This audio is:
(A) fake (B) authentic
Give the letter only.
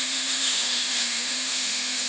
A